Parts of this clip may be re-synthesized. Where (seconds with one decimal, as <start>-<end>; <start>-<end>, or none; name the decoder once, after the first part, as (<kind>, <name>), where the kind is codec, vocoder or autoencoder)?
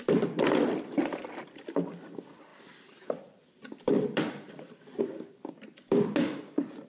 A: none